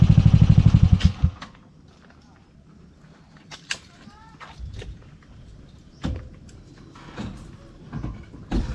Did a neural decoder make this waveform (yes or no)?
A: no